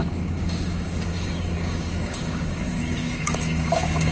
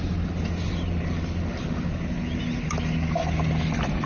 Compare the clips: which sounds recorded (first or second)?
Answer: second